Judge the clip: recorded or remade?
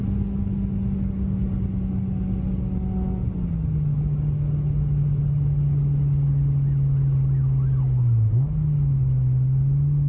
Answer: recorded